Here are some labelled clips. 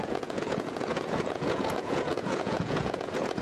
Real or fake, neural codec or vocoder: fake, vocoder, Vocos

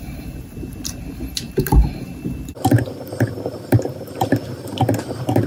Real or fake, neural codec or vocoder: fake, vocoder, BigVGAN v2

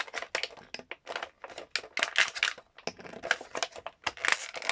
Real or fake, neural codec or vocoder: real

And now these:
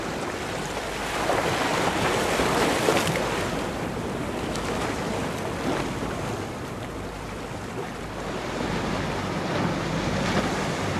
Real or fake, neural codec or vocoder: real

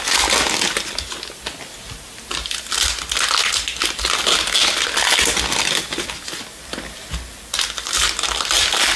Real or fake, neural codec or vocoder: real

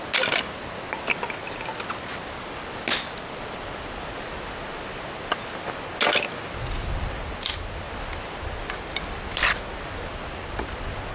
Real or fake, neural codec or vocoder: real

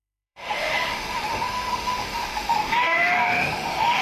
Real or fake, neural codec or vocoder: fake, autoencoder, DAC-VAE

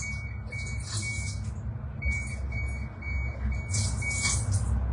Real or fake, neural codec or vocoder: real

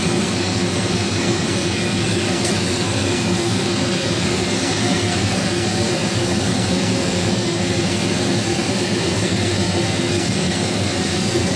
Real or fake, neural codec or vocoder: fake, codec, SNAC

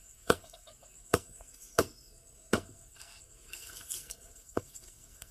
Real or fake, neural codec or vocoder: fake, codec, SNAC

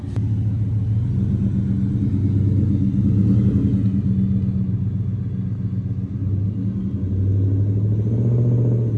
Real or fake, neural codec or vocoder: real